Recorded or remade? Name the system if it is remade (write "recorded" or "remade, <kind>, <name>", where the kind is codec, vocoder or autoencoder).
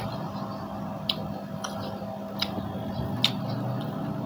recorded